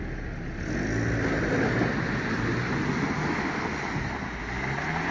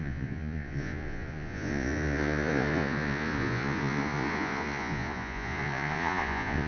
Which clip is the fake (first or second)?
second